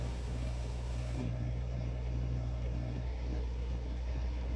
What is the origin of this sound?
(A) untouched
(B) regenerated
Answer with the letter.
B